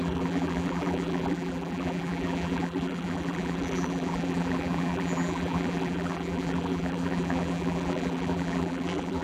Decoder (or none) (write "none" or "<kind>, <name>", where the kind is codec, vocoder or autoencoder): vocoder, BigVGAN v2